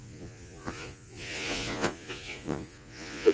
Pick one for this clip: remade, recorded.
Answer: remade